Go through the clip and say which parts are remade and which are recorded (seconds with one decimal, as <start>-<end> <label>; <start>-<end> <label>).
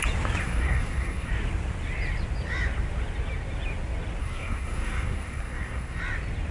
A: 0.0-0.4 recorded; 0.4-1.3 remade; 1.3-4.2 recorded; 4.2-6.0 remade; 6.0-6.5 recorded